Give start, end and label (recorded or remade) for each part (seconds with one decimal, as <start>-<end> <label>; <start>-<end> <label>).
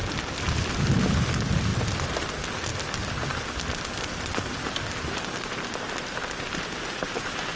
0.0-7.6 recorded